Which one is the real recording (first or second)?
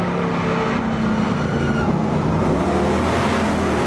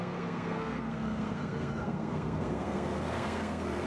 first